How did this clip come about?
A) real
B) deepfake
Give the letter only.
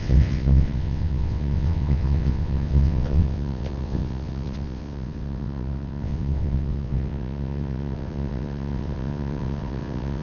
B